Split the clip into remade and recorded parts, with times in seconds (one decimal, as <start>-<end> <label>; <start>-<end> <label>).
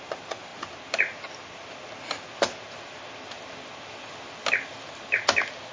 0.0-5.7 recorded